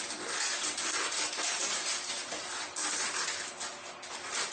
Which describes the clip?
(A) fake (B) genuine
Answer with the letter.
B